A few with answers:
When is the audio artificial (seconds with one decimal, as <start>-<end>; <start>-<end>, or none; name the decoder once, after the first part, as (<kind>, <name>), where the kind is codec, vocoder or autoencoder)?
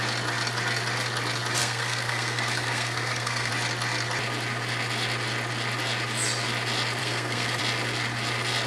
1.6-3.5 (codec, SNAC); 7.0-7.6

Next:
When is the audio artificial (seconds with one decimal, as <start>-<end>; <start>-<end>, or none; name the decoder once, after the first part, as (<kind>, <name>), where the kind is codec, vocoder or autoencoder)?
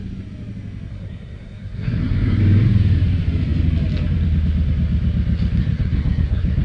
0.9-2.4 (codec, SNAC); 5.6-6.6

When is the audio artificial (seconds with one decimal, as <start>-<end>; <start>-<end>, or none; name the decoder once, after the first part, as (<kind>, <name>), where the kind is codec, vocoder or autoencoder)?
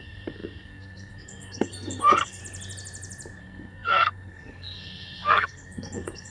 0.0-2.4 (codec, SNAC); 3.4-6.3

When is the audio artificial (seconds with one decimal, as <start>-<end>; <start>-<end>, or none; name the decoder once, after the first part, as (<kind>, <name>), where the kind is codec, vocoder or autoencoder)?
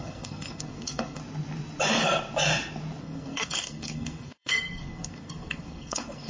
0.0-1.2 (codec, SNAC); 3.0-6.3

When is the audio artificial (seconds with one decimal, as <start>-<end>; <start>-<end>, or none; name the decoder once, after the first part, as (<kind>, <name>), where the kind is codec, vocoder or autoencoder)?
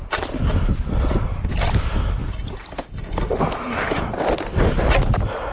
none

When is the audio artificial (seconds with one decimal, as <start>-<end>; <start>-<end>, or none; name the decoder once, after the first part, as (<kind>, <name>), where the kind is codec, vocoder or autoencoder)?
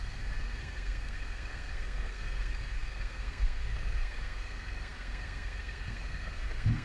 0.0-6.8 (codec, SNAC)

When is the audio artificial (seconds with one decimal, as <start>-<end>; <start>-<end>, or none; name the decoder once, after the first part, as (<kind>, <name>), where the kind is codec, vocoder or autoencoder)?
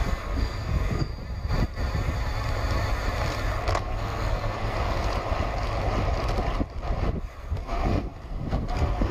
0.0-1.1 (codec, SNAC); 3.8-5.1; 7.4-9.1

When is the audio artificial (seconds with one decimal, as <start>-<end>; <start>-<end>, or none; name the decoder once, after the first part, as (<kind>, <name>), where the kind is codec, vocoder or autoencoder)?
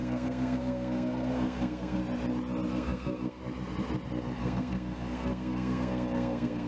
0.0-2.0 (codec, SNAC); 2.7-3.4; 4.4-6.7